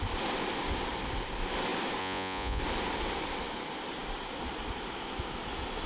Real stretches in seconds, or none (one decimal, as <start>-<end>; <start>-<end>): 0.0-2.0; 2.6-5.9